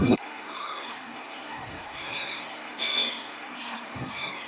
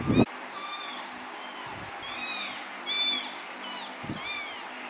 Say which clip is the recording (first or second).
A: second